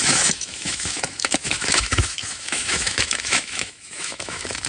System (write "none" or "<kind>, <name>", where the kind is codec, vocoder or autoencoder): autoencoder, DAC-VAE